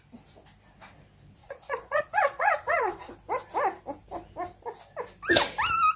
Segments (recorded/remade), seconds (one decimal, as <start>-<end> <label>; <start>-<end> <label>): 0.0-1.4 recorded; 1.4-3.1 remade; 3.1-6.0 recorded